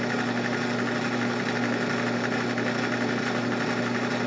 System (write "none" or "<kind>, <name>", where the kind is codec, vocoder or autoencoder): none